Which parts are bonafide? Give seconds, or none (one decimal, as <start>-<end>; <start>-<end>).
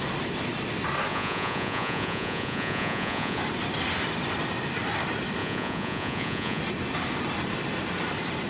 0.0-1.1; 3.4-5.4; 6.6-8.5